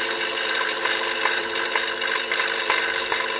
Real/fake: fake